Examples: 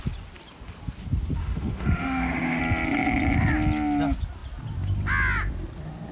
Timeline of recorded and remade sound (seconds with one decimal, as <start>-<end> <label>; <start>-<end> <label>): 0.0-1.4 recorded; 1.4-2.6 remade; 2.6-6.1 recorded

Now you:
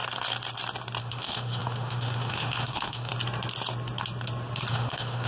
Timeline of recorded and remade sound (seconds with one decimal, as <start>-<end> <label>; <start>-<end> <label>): 0.0-1.0 recorded; 1.0-3.1 remade; 3.1-4.7 recorded; 4.7-5.3 remade

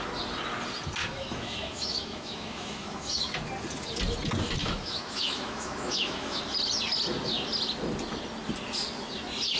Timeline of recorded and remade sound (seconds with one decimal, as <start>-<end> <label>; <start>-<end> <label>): 0.0-1.0 recorded; 1.0-3.3 remade; 3.3-4.6 recorded; 4.6-6.4 remade; 6.4-9.6 recorded

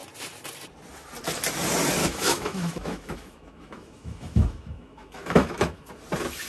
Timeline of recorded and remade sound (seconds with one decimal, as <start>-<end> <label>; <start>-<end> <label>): 0.0-2.0 recorded; 2.0-5.9 remade; 5.9-6.5 recorded

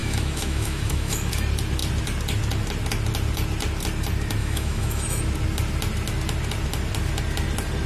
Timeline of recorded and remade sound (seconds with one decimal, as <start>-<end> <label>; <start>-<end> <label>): 0.0-1.3 remade; 1.3-4.4 recorded; 4.4-5.2 remade; 5.2-7.9 recorded

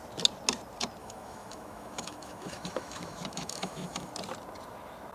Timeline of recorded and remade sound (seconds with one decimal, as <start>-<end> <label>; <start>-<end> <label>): 0.0-1.0 recorded; 1.0-4.1 remade; 4.1-5.1 recorded